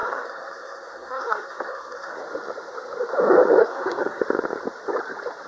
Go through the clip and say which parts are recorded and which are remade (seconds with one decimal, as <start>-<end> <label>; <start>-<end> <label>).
0.0-2.2 remade; 2.2-3.6 recorded; 3.6-4.2 remade; 4.2-5.5 recorded